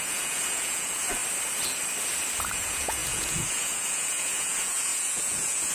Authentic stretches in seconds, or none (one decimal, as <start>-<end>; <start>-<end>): 1.2-2.4